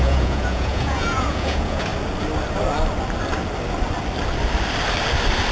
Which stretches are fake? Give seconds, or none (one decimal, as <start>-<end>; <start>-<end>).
0.0-1.9